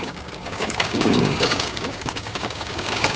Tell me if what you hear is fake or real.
fake